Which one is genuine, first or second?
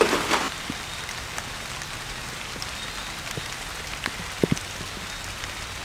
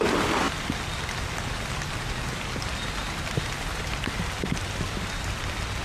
first